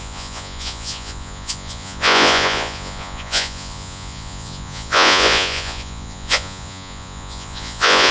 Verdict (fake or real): fake